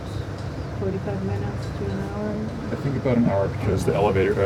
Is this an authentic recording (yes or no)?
no